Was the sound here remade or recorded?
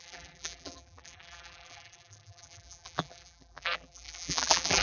remade